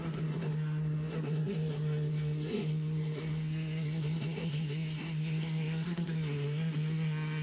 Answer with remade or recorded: remade